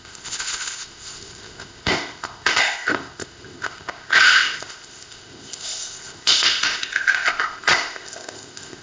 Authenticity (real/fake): fake